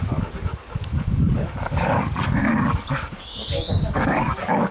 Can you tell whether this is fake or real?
fake